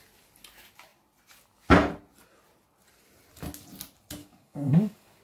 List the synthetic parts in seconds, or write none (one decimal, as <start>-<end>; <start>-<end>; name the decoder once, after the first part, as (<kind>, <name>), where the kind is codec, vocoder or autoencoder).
4.2-5.2 (codec, DAC)

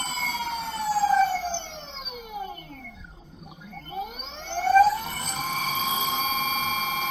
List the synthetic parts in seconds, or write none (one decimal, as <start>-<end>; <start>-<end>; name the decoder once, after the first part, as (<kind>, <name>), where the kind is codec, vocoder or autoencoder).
2.8-3.9 (codec, SNAC); 4.7-6.2